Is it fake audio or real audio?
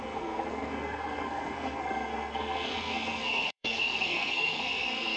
fake